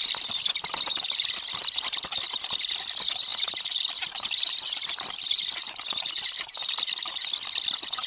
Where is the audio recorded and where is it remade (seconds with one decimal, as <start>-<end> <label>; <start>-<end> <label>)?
0.0-8.1 recorded